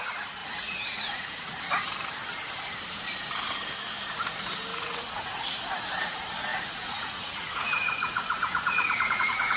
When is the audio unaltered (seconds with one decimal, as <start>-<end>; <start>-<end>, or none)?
0.0-0.4; 1.4-4.7; 5.3-6.5